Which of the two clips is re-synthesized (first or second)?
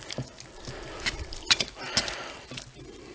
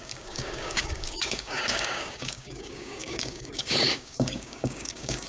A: second